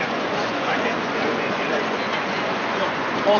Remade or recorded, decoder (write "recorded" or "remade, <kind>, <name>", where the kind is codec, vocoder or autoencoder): remade, vocoder, Vocos